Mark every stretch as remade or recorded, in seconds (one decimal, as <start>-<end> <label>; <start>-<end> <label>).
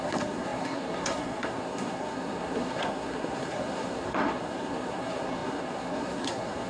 0.0-6.7 remade